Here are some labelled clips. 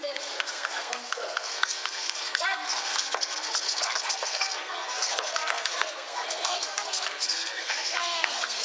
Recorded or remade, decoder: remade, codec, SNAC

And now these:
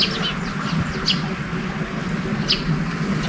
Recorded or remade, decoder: recorded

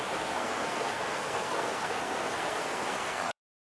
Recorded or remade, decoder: remade, codec, SNAC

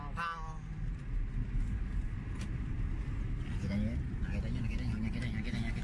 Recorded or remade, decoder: recorded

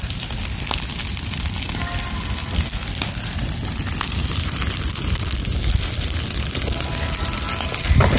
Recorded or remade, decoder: recorded